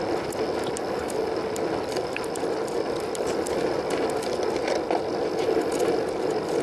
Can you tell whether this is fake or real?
real